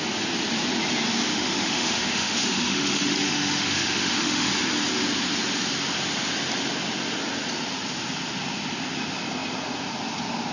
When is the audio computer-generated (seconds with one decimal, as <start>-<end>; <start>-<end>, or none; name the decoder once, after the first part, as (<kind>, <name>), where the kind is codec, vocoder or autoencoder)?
1.3-4.5 (autoencoder, DAC-VAE)